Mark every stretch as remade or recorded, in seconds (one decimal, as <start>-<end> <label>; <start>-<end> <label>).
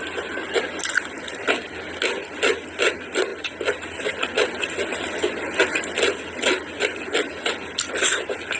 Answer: 0.0-8.6 recorded